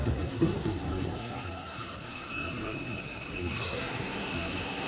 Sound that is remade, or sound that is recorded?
remade